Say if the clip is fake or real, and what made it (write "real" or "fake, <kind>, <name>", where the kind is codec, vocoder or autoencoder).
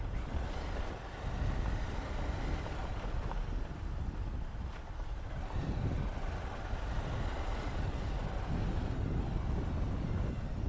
real